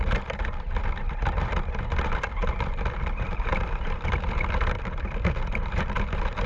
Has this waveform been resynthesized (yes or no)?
yes